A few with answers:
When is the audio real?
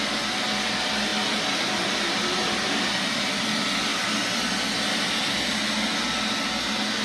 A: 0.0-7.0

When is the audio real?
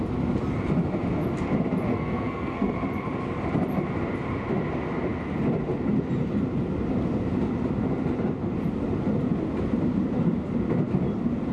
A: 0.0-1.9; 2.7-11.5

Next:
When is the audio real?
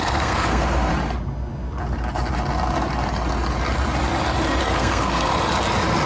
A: 0.9-4.6; 5.3-6.1